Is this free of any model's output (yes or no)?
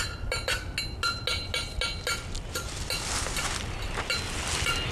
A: yes